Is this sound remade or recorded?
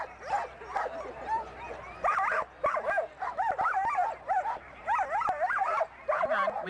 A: recorded